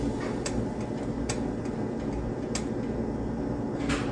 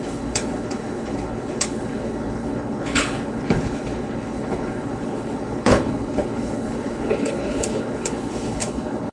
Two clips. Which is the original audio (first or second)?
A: first